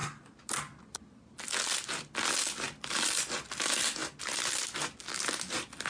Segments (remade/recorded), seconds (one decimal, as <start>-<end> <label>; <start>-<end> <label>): 0.0-5.9 recorded